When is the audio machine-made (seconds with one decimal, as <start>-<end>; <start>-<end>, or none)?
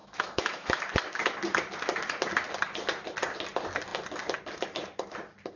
0.0-0.8